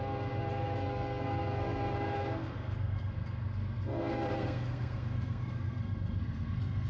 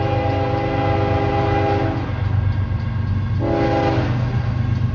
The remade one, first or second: first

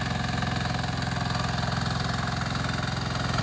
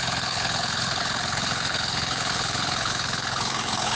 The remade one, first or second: second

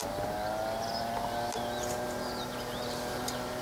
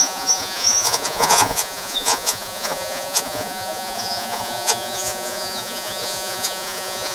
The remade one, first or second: second